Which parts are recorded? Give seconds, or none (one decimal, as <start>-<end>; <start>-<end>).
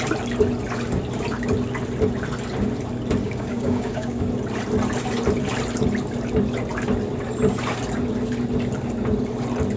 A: 0.0-3.2; 4.3-9.8